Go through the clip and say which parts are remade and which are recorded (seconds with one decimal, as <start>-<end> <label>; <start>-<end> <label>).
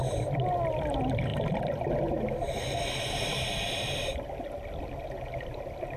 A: 0.0-6.0 recorded